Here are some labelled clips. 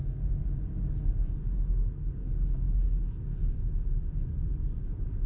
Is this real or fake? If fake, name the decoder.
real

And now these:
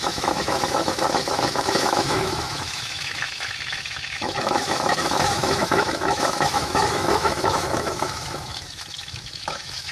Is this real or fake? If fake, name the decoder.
fake, autoencoder, DAC-VAE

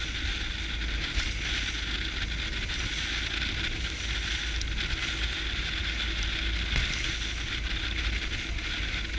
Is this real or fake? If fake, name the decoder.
real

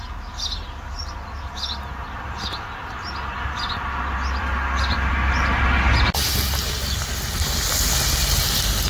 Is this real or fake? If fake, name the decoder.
real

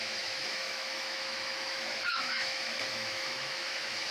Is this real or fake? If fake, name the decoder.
fake, autoencoder, DAC-VAE